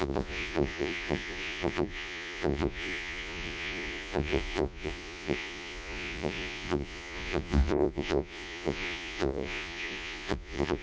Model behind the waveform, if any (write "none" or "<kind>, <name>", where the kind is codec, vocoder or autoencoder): vocoder, Vocos